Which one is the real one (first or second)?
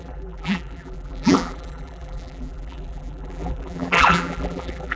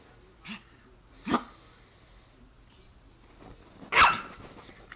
second